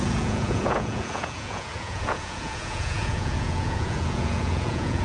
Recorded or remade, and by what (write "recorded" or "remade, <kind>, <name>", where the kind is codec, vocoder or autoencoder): remade, vocoder, Vocos